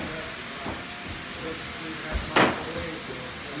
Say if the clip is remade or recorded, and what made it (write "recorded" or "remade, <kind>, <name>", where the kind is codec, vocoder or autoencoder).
recorded